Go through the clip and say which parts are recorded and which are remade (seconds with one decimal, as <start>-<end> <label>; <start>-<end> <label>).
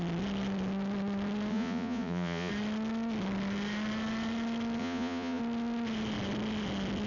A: 0.0-1.5 recorded; 1.5-2.5 remade; 2.5-4.8 recorded; 4.8-5.4 remade; 5.4-7.1 recorded